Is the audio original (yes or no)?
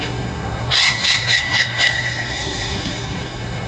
no